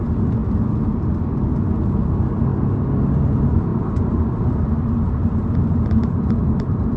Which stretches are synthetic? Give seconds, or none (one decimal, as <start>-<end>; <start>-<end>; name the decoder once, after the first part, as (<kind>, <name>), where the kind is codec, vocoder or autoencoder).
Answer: 3.7-7.0 (vocoder, BigVGAN v2)